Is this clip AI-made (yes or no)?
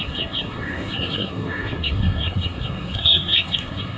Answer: yes